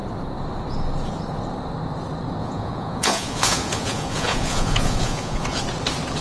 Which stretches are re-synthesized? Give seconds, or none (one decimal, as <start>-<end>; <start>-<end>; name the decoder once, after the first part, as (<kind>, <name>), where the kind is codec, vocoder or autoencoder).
2.4-5.6 (vocoder, Vocos)